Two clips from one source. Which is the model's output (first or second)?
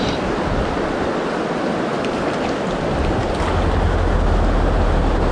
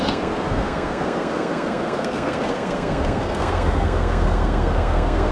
second